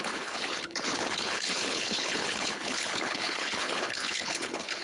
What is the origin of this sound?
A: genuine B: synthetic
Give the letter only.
B